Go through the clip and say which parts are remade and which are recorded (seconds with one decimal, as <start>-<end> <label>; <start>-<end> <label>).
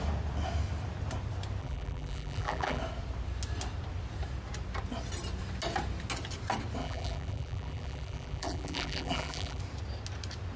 0.0-1.6 recorded; 1.6-2.8 remade; 2.8-6.8 recorded; 6.8-9.6 remade; 9.6-10.6 recorded